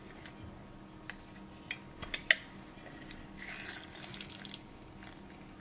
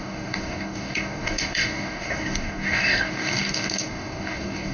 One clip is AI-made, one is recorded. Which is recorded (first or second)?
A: first